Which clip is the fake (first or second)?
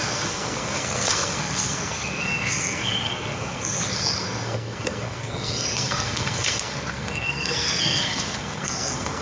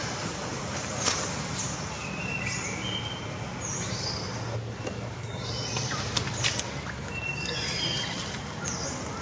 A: first